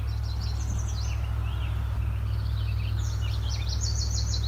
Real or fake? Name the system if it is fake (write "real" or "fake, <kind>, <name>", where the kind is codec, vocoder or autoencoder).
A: real